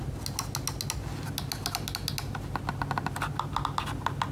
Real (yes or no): yes